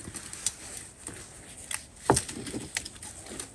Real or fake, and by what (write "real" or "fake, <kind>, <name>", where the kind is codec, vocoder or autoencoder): real